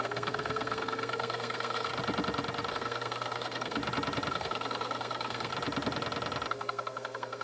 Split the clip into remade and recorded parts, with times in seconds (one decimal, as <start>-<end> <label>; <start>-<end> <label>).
0.0-1.9 remade; 1.9-2.7 recorded; 2.7-3.8 remade; 3.8-4.3 recorded; 4.3-5.5 remade; 5.5-6.5 recorded; 6.5-7.4 remade